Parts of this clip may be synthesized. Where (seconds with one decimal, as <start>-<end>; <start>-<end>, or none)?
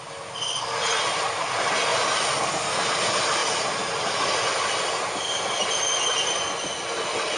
none